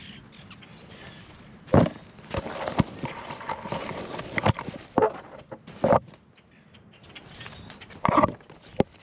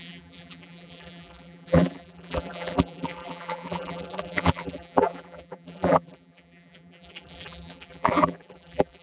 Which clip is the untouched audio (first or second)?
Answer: first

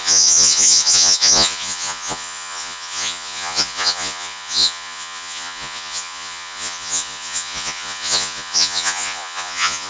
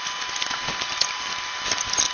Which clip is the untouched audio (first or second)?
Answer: second